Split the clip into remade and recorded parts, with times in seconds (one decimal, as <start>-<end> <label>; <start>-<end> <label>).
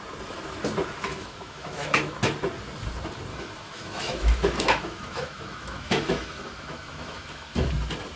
0.0-1.1 recorded; 1.1-2.2 remade; 2.2-3.3 recorded; 3.3-7.7 remade; 7.7-8.2 recorded